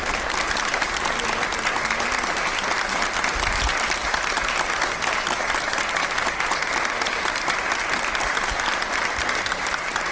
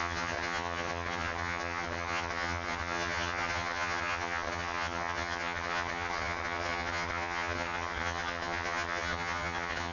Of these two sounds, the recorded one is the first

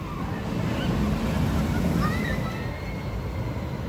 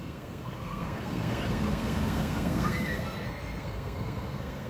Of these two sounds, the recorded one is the first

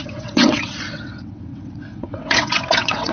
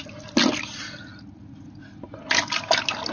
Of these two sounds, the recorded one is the second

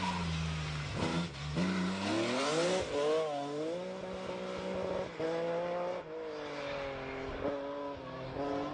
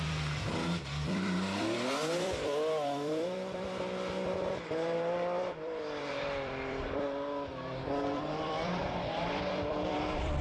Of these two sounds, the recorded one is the first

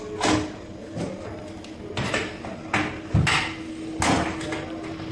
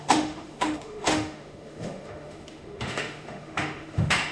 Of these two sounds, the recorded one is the first